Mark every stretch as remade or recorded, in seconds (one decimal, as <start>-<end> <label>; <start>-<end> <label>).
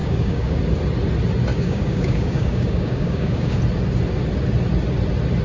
0.0-0.6 remade; 0.6-1.5 recorded; 1.5-3.6 remade; 3.6-5.4 recorded